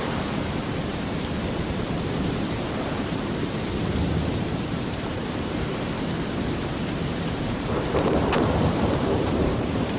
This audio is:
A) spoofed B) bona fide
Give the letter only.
A